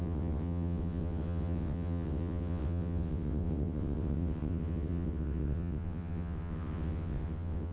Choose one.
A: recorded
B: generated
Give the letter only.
B